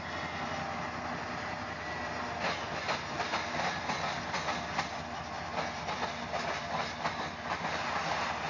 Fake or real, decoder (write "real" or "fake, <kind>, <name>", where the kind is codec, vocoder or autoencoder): real